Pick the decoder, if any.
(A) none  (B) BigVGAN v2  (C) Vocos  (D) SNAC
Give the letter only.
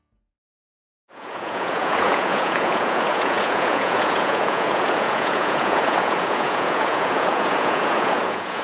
C